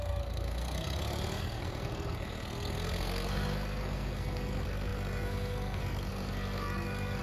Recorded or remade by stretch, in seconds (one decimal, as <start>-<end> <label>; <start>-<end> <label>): 0.0-7.2 remade